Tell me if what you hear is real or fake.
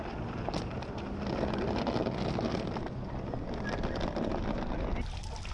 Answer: real